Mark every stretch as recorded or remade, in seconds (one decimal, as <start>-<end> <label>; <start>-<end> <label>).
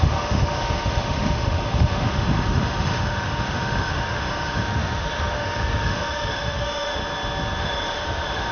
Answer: 0.0-7.0 remade; 7.0-7.6 recorded; 7.6-8.5 remade